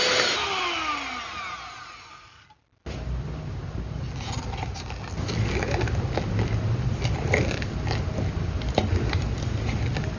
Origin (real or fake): real